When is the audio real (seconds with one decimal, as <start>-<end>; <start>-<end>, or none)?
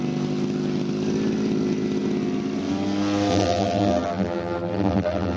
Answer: 0.0-3.3